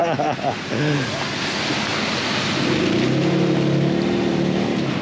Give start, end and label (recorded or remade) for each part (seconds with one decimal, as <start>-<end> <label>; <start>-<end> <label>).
0.0-5.0 recorded

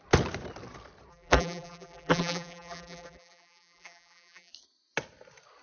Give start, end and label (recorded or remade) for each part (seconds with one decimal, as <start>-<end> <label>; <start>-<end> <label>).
0.0-1.1 recorded; 1.1-4.5 remade; 4.5-5.6 recorded

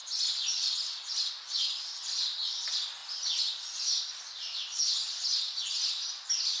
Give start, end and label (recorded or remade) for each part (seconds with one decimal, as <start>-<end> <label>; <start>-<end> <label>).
0.0-6.6 recorded